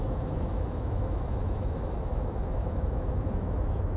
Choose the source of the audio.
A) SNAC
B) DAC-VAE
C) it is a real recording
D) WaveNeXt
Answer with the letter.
B